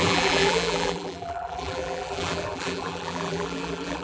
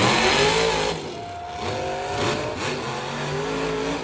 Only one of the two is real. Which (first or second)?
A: second